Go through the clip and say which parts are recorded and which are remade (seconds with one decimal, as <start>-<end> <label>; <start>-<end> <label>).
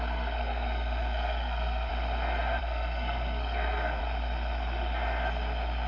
0.0-1.9 remade; 1.9-2.6 recorded; 2.6-4.0 remade; 4.0-5.9 recorded